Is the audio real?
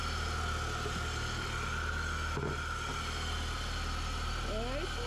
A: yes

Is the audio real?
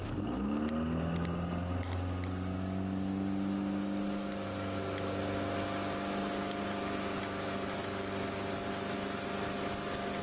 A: yes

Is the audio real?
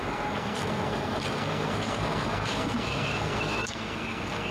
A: no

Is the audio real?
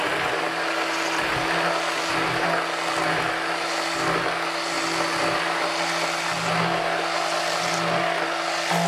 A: yes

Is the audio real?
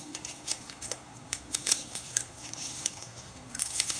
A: no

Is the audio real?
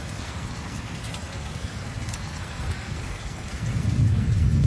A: no